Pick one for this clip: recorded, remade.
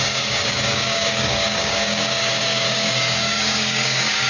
remade